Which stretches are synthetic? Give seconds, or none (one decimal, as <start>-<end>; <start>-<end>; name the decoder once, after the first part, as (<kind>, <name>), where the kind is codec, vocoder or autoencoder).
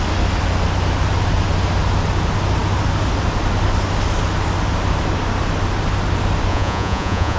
6.5-7.4 (vocoder, Vocos)